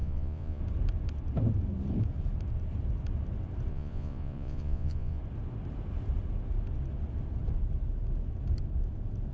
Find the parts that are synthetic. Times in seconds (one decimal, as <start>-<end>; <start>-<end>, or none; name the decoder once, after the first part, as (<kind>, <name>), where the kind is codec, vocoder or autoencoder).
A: 0.0-0.6 (vocoder, Vocos); 3.7-5.2